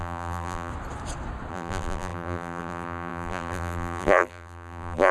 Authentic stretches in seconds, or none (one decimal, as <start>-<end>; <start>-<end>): 0.7-1.5